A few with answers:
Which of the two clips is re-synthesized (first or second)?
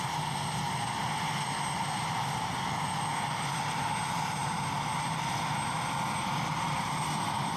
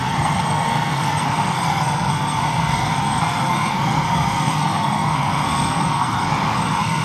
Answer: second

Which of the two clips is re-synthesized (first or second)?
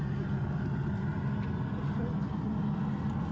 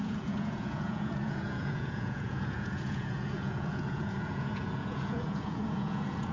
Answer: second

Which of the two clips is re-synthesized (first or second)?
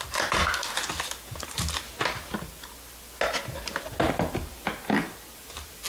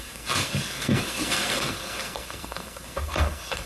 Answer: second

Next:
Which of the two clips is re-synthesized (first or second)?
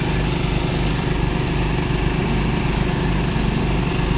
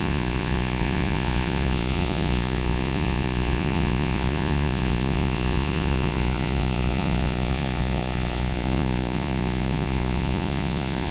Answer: second